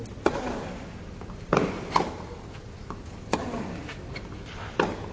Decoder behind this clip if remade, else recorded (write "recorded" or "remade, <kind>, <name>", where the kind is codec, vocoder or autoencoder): recorded